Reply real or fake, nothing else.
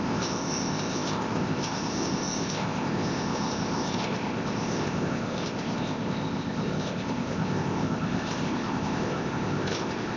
fake